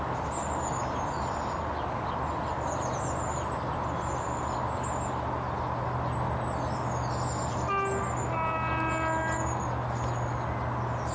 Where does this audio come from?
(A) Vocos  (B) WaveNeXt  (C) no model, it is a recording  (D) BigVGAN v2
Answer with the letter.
C